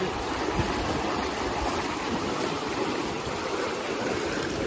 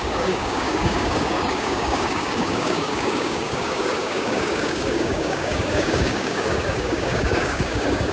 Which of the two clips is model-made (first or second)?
second